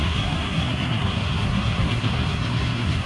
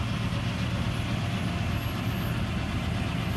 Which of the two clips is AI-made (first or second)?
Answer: first